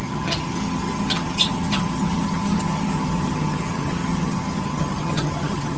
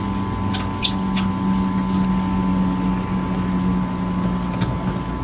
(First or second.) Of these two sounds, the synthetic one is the first